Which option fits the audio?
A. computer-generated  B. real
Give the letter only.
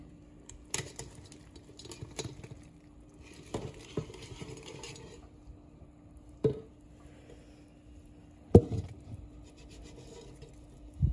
B